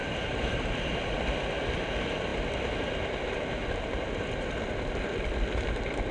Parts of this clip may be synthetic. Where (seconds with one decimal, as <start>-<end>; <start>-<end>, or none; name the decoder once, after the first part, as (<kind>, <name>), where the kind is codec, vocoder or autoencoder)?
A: 0.0-0.7 (vocoder, BigVGAN v2)